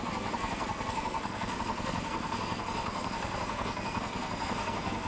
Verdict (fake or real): fake